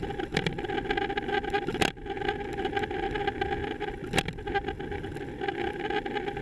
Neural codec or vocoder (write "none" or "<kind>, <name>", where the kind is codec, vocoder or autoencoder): none